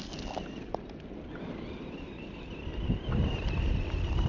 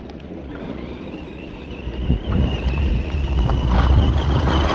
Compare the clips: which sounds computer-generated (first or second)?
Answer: second